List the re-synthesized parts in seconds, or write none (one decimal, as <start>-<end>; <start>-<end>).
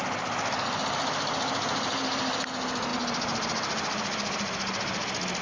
none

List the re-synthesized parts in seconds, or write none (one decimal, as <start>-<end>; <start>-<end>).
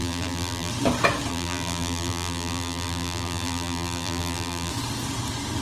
0.0-0.7; 1.3-4.7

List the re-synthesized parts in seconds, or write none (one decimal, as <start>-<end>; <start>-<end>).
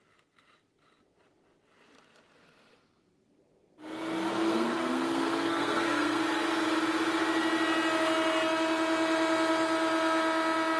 4.3-6.2